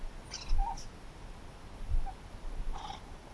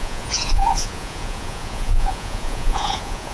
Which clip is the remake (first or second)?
second